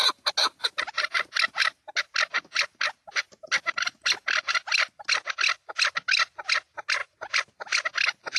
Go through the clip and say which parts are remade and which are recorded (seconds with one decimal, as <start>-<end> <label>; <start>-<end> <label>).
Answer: 0.0-8.4 recorded